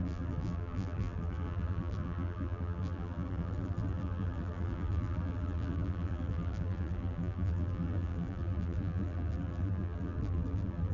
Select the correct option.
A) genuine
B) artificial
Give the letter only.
B